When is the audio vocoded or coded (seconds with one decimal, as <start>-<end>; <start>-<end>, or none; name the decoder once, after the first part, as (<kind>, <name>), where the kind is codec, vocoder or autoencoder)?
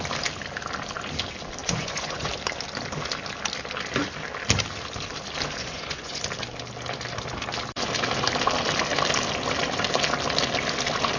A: 1.6-2.3 (vocoder, Vocos); 5.6-6.2